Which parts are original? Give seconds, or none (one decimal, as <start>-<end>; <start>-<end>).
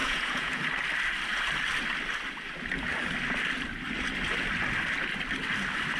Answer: 0.6-6.0